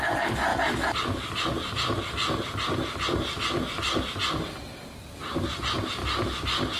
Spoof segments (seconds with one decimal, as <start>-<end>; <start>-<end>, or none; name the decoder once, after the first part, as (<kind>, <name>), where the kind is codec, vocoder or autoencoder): none